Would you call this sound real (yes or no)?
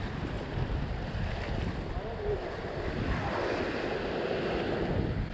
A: yes